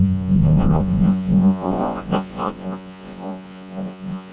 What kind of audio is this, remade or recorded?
remade